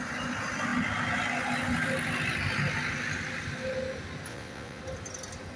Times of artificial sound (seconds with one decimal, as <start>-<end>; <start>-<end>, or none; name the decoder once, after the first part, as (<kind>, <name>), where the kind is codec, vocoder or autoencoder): 4.3-4.8 (vocoder, WaveNeXt)